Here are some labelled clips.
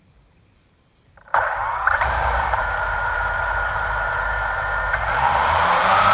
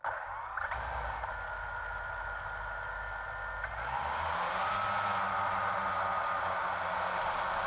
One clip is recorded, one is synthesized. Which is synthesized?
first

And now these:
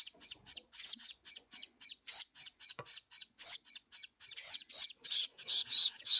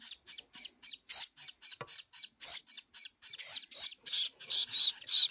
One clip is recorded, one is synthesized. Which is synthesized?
first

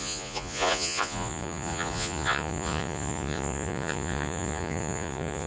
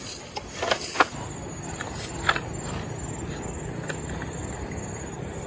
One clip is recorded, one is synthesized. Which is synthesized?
first